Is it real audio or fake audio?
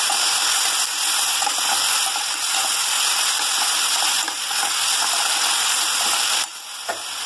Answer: real